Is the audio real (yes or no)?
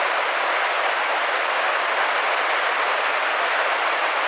yes